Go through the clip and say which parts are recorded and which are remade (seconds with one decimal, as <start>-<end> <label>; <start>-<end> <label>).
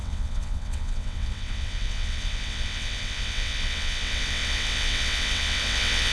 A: 0.0-6.1 remade